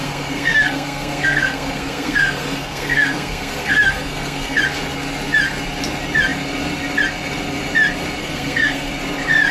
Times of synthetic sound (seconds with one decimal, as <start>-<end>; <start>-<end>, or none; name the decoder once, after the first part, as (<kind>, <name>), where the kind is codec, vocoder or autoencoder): 0.0-4.6 (codec, SNAC); 8.2-8.9